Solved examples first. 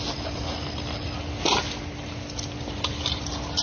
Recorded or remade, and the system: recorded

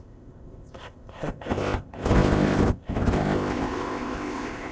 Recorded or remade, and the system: remade, codec, ZipCodec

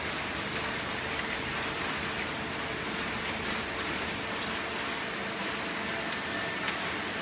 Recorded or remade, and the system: recorded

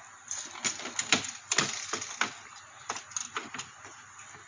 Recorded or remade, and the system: recorded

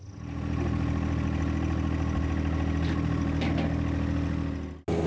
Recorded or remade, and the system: recorded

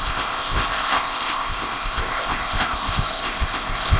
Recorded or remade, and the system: remade, codec, ZipCodec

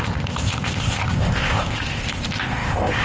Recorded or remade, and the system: remade, codec, ZipCodec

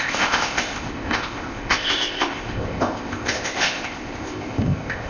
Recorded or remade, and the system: remade, codec, ZipCodec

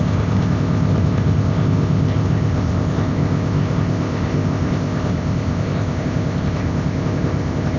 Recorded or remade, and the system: remade, codec, ZipCodec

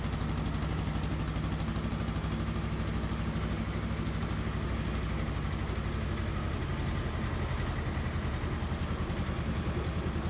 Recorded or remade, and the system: recorded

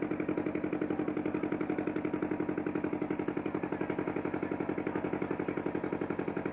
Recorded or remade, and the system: recorded